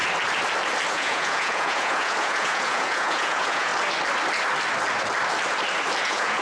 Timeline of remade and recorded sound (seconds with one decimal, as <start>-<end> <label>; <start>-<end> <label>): 0.0-0.9 recorded; 0.9-3.7 remade; 3.7-6.0 recorded; 6.0-6.4 remade